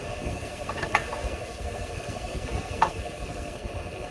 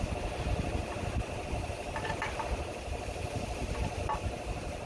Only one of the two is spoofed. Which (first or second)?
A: first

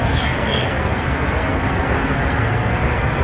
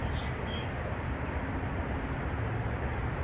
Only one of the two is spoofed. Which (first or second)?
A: first